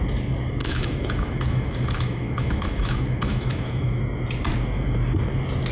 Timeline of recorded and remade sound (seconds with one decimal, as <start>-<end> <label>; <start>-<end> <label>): 0.0-0.6 recorded; 0.6-4.0 remade; 4.0-5.7 recorded